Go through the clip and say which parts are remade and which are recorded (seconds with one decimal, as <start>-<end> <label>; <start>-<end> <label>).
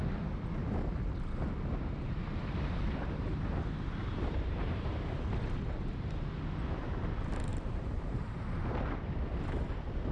0.0-2.2 recorded; 2.2-4.8 remade; 4.8-7.5 recorded; 7.5-8.8 remade; 8.8-10.1 recorded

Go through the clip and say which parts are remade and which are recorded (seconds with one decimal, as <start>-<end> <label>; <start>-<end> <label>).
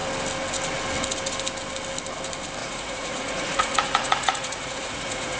0.0-2.6 recorded; 2.6-5.4 remade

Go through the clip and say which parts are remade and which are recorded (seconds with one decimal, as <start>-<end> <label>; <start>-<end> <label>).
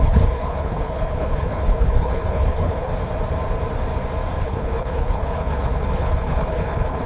0.0-2.9 remade; 2.9-4.4 recorded; 4.4-7.1 remade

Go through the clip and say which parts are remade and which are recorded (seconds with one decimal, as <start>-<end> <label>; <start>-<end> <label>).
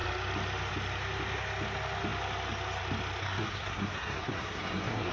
0.0-3.2 recorded; 3.2-5.1 remade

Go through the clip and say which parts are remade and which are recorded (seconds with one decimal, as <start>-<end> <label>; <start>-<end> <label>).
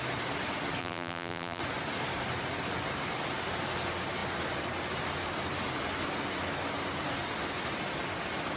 0.0-0.8 recorded; 0.8-1.6 remade; 1.6-8.6 recorded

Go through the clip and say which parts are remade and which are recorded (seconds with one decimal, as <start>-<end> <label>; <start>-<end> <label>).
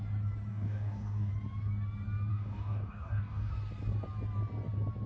0.0-0.5 recorded; 0.5-1.3 remade; 1.3-2.3 recorded; 2.3-3.5 remade; 3.5-5.1 recorded